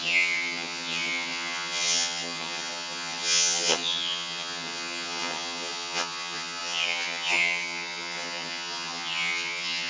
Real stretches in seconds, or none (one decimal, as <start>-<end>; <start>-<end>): none